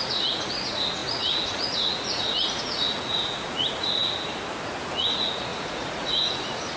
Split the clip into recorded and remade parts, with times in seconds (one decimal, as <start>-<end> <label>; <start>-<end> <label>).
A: 0.0-4.0 remade; 4.0-4.8 recorded; 4.8-6.8 remade